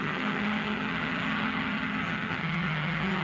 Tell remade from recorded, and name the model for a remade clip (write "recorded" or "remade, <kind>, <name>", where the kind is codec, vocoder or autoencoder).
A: remade, vocoder, HiFi-GAN